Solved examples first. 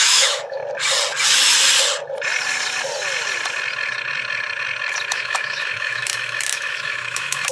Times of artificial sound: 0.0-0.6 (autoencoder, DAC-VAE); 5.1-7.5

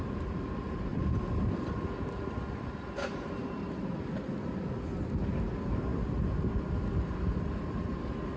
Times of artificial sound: none

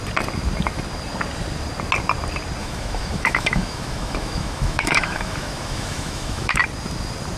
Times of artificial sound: 2.6-6.6 (autoencoder, DAC-VAE)

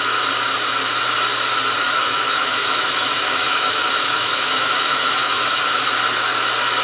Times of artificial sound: 1.8-5.9 (autoencoder, DAC-VAE)

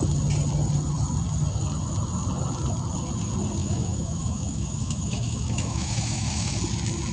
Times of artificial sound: 3.6-6.6 (autoencoder, DAC-VAE)

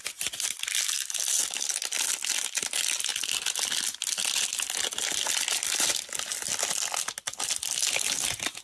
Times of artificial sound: none

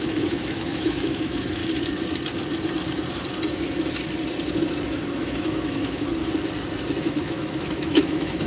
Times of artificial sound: 0.0-1.6 (autoencoder, DAC-VAE); 5.1-6.1; 7.0-8.5